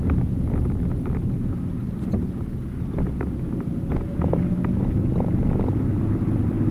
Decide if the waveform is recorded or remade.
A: recorded